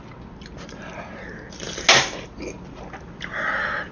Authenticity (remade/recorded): recorded